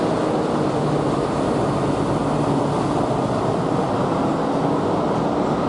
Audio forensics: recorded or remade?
recorded